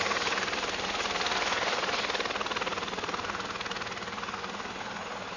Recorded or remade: recorded